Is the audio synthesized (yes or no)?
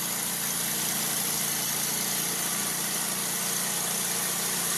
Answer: no